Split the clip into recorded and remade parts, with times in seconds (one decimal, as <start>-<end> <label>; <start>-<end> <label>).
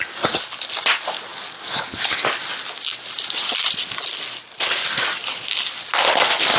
0.0-6.6 recorded